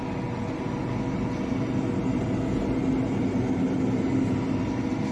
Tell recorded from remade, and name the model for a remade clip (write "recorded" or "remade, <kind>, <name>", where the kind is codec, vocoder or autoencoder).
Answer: recorded